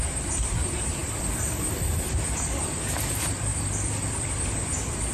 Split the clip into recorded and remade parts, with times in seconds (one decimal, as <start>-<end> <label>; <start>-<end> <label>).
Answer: 0.0-5.1 remade